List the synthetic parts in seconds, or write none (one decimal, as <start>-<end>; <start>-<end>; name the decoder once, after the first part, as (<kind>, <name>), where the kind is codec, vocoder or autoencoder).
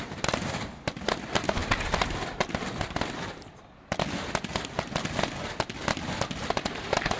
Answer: none